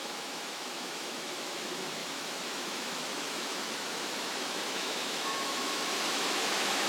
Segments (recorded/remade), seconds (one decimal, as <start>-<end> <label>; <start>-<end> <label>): 0.0-6.9 remade